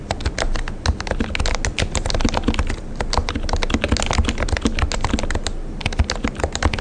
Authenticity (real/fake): real